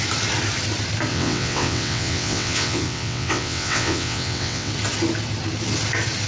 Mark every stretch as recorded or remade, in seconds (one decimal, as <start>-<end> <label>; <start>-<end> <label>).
0.0-1.1 recorded; 1.1-4.7 remade; 4.7-6.3 recorded